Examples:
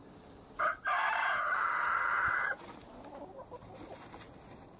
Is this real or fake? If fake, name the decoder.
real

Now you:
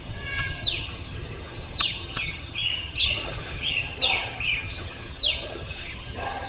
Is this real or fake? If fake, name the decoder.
fake, vocoder, HiFi-GAN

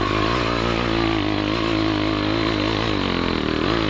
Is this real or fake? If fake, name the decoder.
real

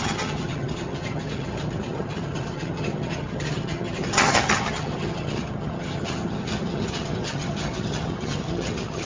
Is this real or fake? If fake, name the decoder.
fake, vocoder, HiFi-GAN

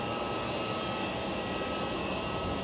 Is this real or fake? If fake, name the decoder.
real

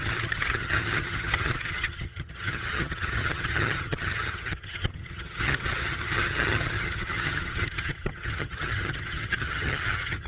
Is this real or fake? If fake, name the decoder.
fake, vocoder, HiFi-GAN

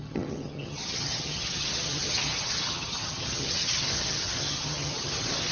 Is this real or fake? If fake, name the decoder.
fake, vocoder, HiFi-GAN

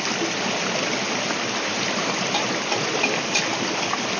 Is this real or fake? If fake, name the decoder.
real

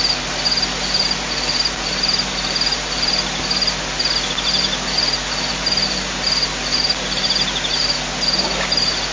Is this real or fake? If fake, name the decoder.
real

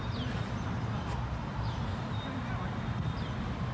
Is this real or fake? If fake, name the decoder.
real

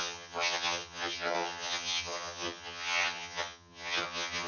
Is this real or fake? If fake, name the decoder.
fake, vocoder, HiFi-GAN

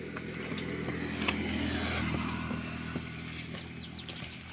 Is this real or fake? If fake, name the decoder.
real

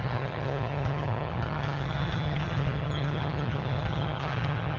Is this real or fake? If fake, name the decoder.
fake, vocoder, HiFi-GAN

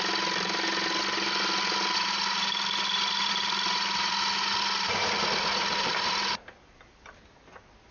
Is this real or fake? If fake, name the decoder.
real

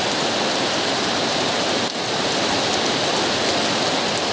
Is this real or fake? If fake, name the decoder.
real